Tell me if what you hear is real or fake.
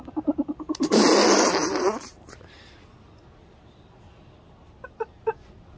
real